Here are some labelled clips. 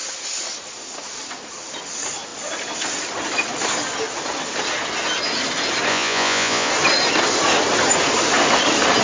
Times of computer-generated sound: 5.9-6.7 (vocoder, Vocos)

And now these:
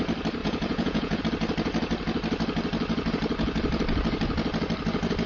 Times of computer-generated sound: 0.4-1.2 (vocoder, Vocos)

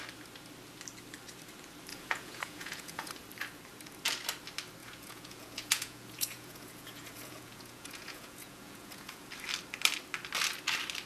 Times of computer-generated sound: 1.9-3.1 (vocoder, Vocos); 4.8-9.3

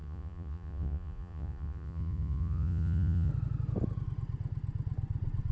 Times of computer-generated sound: 0.0-3.3 (vocoder, Vocos)

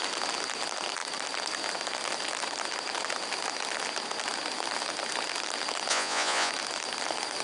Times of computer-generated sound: 5.9-6.5 (vocoder, Vocos)